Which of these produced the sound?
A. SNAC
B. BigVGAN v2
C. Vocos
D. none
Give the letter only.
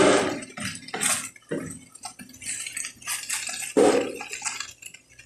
D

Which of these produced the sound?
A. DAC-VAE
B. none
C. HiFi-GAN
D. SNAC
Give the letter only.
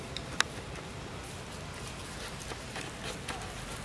B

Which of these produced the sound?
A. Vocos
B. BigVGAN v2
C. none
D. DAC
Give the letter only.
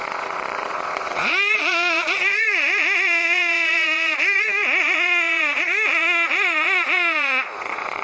A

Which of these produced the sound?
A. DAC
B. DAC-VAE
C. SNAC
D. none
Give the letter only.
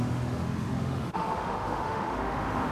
B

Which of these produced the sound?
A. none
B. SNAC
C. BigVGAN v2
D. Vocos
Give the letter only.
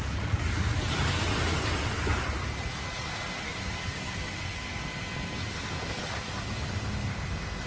A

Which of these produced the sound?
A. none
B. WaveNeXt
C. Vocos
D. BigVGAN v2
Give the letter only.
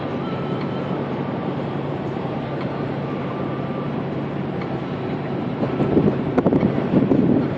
D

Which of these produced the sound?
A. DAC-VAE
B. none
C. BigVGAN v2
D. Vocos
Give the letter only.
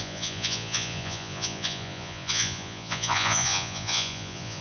D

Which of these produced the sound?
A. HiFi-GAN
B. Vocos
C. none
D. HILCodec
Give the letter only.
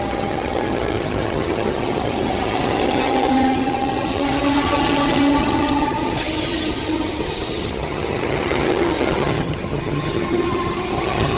A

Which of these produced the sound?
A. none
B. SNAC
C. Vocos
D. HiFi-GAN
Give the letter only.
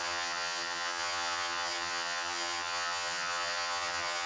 D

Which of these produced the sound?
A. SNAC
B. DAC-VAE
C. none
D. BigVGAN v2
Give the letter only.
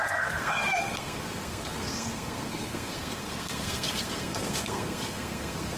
A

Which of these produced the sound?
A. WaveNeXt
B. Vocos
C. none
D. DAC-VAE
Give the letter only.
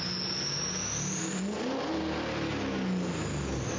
C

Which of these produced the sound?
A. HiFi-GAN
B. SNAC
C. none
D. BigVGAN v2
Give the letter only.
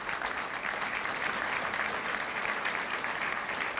C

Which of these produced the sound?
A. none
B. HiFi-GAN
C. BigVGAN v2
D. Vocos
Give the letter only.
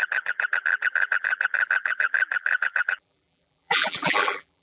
C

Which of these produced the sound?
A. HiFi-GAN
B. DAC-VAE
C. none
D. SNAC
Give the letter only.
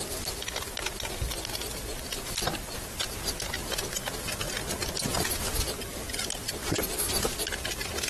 C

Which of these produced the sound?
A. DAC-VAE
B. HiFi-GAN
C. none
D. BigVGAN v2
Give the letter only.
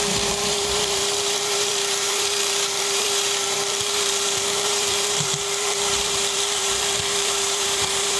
D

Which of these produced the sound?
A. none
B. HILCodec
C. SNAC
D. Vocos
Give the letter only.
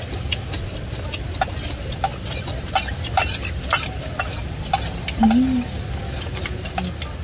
A